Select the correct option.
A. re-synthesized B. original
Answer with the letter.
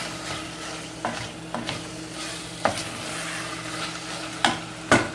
A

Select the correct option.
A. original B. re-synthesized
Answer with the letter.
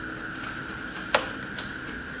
A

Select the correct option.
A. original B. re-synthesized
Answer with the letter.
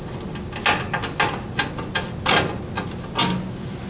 A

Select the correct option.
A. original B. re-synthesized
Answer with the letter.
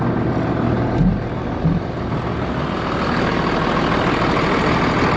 A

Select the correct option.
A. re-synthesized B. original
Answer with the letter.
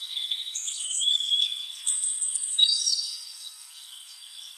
A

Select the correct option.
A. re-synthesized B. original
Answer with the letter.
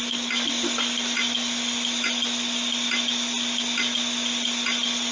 B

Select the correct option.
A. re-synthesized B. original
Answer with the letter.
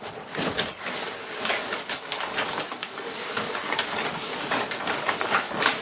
A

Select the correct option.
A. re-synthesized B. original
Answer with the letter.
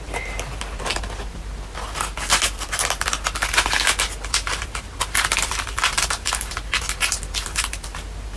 B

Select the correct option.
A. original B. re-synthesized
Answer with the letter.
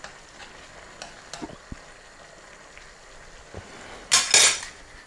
A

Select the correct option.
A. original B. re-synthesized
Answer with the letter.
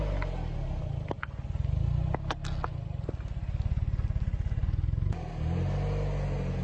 A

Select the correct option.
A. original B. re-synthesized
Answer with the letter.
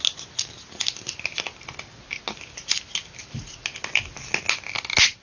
A